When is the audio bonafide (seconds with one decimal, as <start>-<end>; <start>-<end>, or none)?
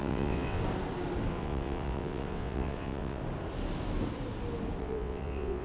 0.6-1.3; 3.2-4.8